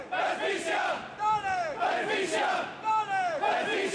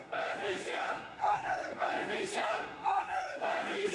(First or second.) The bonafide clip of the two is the first